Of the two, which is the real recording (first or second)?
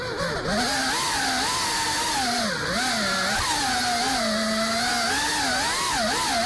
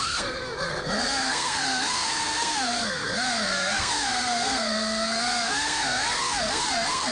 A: first